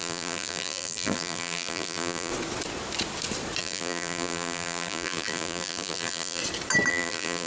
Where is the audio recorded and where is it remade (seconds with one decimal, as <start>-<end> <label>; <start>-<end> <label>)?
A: 0.0-2.3 remade; 2.3-3.6 recorded; 3.6-6.4 remade; 6.4-6.9 recorded; 6.9-7.5 remade